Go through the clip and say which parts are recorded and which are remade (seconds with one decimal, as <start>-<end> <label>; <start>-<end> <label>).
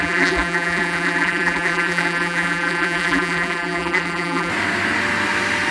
0.0-4.5 remade; 4.5-5.7 recorded